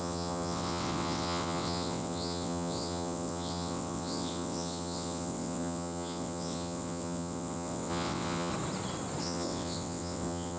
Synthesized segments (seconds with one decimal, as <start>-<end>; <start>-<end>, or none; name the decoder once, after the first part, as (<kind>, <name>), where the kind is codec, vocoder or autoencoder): 0.0-8.5 (vocoder, WaveNeXt); 9.2-10.6

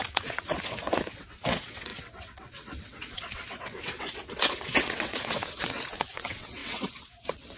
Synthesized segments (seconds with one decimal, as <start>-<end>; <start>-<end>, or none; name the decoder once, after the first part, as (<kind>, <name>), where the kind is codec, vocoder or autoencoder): 0.0-7.6 (vocoder, WaveNeXt)

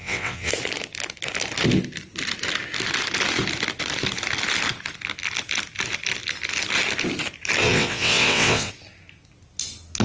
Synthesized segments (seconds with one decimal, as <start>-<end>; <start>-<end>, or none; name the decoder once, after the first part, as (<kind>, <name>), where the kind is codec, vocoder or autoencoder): 0.0-0.5 (vocoder, WaveNeXt); 7.6-8.7

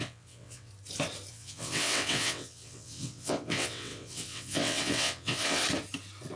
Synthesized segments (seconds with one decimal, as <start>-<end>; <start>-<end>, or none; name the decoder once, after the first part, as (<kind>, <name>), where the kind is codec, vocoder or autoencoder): 0.0-0.7 (vocoder, WaveNeXt); 1.3-5.6

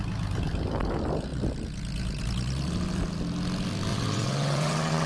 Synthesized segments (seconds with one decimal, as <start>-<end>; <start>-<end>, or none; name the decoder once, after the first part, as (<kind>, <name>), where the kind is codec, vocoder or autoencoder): 3.9-5.1 (vocoder, WaveNeXt)

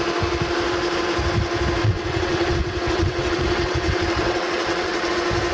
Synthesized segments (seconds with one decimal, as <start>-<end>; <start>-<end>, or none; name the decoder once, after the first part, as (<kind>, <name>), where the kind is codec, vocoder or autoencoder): 1.8-5.1 (vocoder, WaveNeXt)

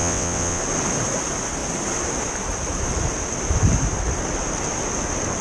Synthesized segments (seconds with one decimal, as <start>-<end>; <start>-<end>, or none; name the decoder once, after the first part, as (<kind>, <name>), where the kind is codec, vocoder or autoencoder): 0.0-0.6 (vocoder, WaveNeXt)

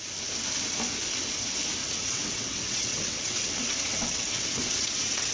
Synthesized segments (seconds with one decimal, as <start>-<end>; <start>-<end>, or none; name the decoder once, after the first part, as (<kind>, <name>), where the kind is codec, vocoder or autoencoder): 1.8-5.3 (vocoder, WaveNeXt)